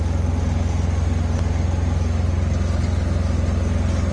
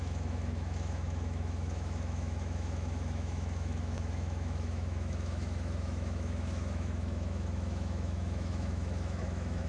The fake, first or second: second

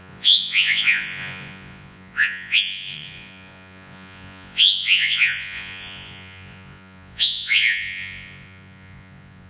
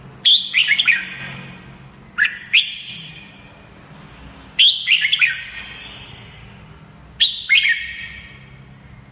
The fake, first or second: first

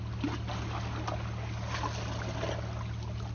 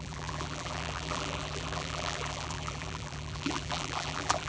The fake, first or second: second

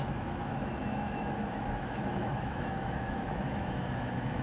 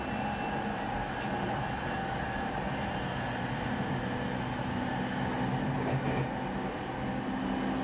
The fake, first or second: first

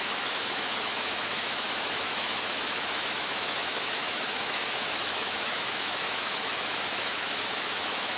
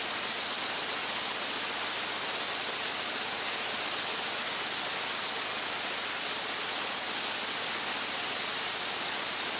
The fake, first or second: first